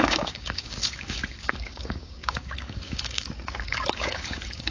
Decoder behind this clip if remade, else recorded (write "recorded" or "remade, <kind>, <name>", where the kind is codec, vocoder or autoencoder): remade, codec, DAC